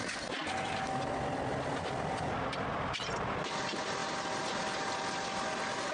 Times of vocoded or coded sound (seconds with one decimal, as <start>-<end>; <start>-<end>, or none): none